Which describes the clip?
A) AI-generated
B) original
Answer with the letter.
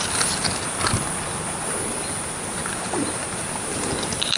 B